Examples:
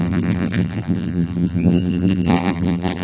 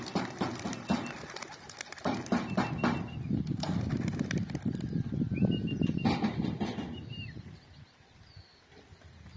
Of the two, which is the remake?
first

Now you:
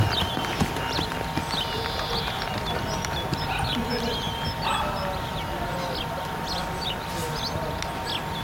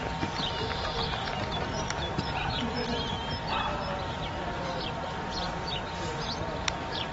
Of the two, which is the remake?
second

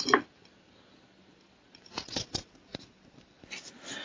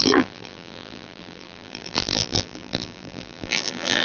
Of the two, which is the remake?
second